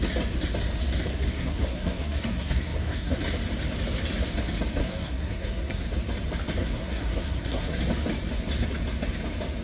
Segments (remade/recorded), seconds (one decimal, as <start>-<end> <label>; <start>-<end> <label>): 0.0-1.1 recorded; 1.1-3.2 remade; 3.2-4.8 recorded; 4.8-5.8 remade; 5.8-6.6 recorded; 6.6-7.8 remade; 7.8-9.6 recorded